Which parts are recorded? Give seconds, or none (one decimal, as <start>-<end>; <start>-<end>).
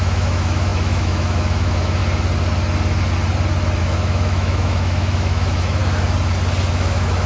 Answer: 2.0-3.8; 5.8-6.7